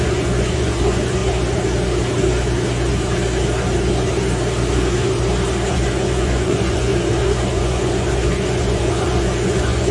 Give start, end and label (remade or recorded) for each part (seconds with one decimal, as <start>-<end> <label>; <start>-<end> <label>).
0.0-1.2 remade; 1.2-5.7 recorded; 5.7-6.9 remade; 6.9-7.5 recorded; 7.5-9.9 remade